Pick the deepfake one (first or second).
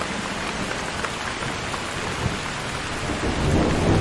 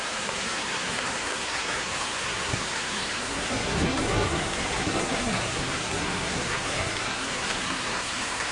second